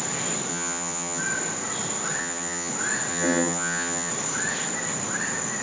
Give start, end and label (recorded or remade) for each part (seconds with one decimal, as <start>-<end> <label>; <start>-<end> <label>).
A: 0.0-0.5 recorded; 0.5-1.2 remade; 1.2-2.2 recorded; 2.2-2.7 remade; 2.7-3.1 recorded; 3.1-4.1 remade; 4.1-5.6 recorded